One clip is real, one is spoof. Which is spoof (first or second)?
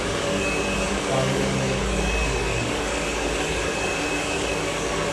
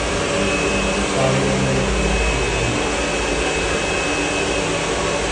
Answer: first